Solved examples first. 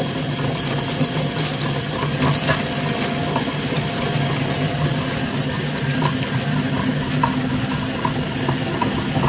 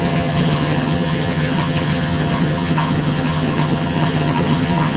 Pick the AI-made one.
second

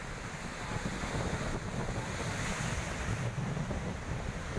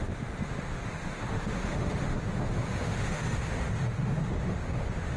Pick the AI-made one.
second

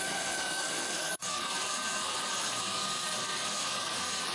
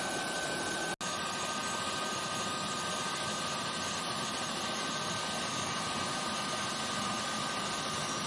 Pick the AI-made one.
first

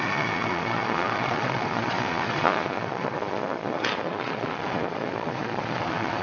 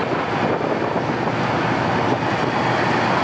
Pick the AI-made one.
first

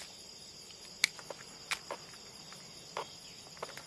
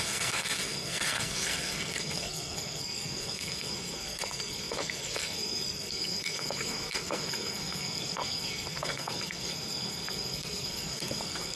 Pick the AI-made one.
second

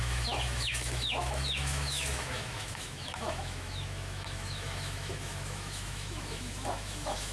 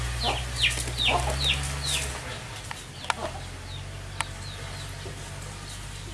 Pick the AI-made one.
first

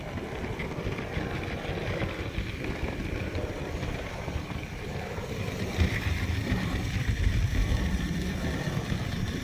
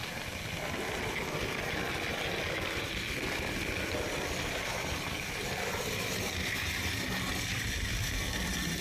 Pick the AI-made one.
first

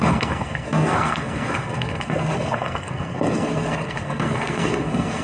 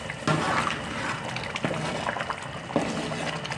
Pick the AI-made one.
first